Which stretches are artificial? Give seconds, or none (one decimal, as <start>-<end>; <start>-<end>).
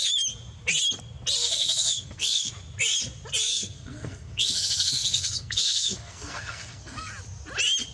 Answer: 1.4-2.5; 3.5-7.1